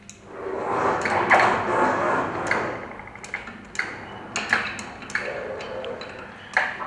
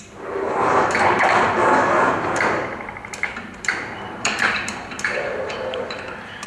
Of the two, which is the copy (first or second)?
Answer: second